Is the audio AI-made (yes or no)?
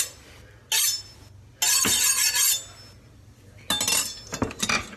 no